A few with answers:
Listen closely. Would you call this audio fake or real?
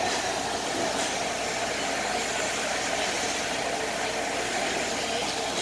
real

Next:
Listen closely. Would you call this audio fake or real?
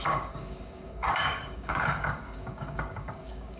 fake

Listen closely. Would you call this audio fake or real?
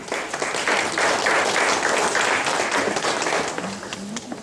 real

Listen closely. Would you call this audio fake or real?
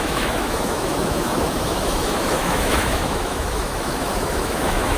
fake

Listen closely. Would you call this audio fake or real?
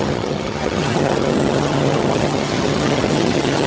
fake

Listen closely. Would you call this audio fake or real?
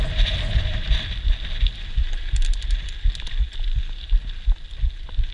real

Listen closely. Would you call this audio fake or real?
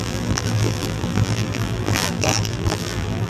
fake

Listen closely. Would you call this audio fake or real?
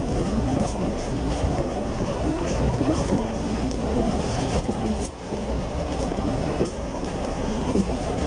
fake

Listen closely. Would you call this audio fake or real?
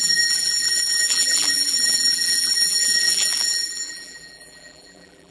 fake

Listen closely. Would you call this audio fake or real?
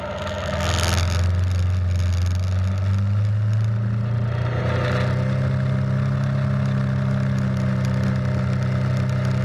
real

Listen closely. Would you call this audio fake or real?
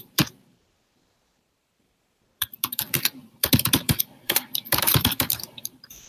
fake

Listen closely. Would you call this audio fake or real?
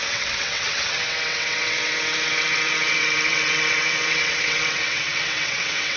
fake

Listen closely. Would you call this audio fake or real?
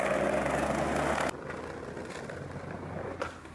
real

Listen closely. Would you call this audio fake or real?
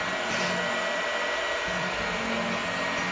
real